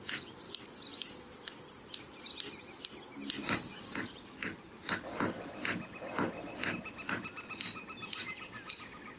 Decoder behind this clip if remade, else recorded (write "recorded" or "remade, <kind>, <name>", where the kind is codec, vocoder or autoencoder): remade, vocoder, BigVGAN v2